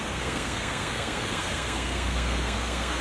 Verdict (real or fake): fake